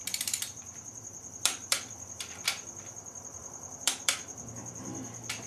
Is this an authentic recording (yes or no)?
no